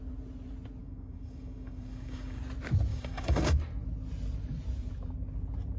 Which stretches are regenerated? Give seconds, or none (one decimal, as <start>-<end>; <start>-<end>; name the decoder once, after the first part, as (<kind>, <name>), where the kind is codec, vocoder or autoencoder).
0.8-2.4 (codec, DAC); 2.9-3.5

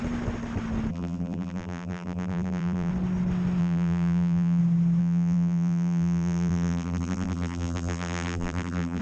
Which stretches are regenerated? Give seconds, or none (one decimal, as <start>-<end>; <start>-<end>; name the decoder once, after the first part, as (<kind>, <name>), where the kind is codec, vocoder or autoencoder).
0.9-2.9 (vocoder, BigVGAN v2); 3.6-4.6; 5.0-9.0

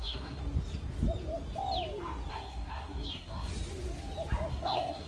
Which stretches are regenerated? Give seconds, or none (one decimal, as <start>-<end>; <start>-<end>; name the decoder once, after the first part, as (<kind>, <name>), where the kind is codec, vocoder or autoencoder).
0.0-0.4 (codec, SNAC); 2.3-3.5; 4.5-5.1

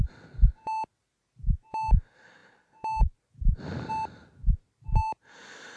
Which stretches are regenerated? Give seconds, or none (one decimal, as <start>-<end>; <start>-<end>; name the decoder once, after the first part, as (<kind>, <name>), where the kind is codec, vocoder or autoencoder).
none